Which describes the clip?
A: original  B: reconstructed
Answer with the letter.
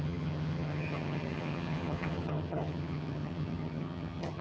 B